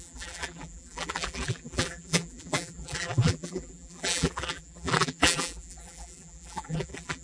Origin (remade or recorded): remade